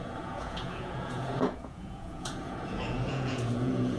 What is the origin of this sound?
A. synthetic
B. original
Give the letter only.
A